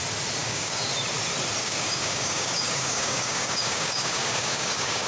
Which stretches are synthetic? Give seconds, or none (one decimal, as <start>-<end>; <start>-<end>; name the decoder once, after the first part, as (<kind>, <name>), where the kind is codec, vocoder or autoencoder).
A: 0.4-0.9 (codec, DAC); 1.6-5.1